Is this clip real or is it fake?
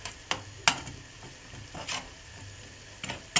real